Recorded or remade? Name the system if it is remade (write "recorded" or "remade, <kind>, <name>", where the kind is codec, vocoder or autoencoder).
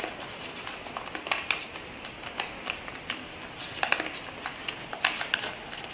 recorded